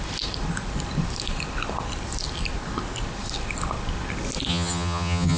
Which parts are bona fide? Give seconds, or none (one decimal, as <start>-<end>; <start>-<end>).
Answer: 0.0-4.5